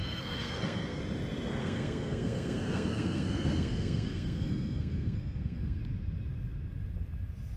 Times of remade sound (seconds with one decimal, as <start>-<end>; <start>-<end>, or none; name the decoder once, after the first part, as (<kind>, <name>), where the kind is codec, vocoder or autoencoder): 0.0-1.0 (codec, SNAC); 1.6-5.8